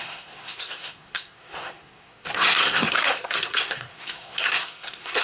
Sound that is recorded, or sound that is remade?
remade